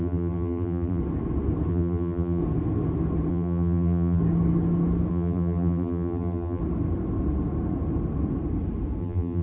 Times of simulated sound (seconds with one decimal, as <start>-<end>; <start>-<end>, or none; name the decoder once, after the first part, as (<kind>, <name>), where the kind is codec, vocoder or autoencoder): 0.0-1.0 (vocoder, BigVGAN v2); 1.7-2.4; 3.3-4.2; 5.1-6.6; 9.0-9.4